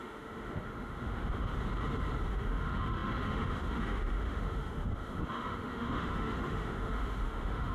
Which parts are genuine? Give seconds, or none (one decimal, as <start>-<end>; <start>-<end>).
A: 1.5-2.3

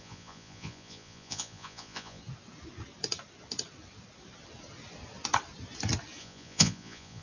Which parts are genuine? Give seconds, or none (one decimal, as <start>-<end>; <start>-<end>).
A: 2.2-6.2

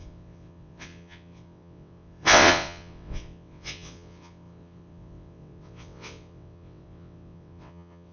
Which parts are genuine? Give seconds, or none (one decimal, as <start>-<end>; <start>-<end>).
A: none

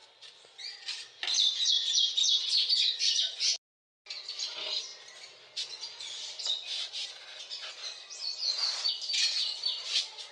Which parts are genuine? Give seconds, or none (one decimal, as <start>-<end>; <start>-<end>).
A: 0.0-10.3

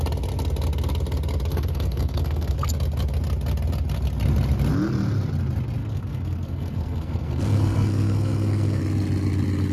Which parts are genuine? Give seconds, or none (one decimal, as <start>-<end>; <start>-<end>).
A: 0.0-1.5; 2.7-5.8; 8.8-9.7